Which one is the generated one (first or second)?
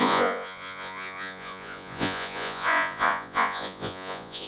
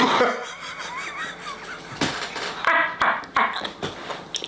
first